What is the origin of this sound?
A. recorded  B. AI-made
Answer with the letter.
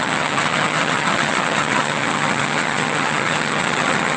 B